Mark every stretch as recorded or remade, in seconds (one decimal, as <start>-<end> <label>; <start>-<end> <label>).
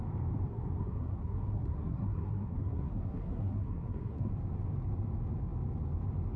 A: 0.0-0.5 recorded; 0.5-4.3 remade; 4.3-6.4 recorded